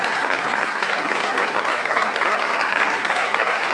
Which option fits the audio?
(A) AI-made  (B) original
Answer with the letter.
A